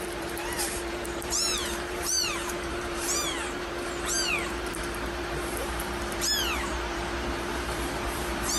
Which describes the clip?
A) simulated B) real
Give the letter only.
A